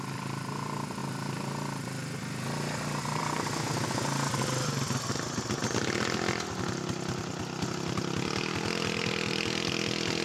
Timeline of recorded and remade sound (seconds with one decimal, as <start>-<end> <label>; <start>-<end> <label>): 0.0-10.2 recorded